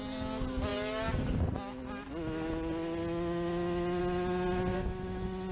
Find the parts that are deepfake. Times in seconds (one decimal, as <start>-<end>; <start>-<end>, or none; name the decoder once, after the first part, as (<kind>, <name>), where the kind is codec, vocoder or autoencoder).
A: none